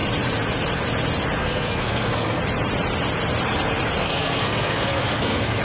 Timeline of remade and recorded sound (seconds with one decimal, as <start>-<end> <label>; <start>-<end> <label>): 0.0-1.4 recorded; 1.4-2.4 remade; 2.4-4.0 recorded; 4.0-5.6 remade